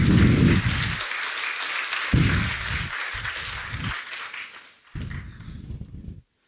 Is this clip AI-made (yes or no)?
no